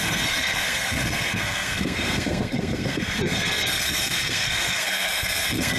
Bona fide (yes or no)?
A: no